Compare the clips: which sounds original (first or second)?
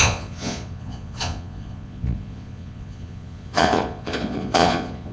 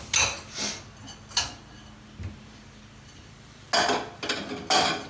second